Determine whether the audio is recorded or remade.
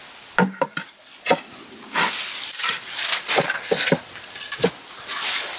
recorded